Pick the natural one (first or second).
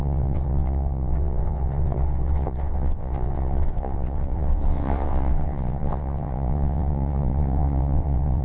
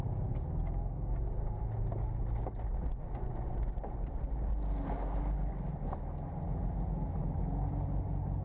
second